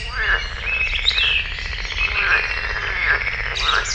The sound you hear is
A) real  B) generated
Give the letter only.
A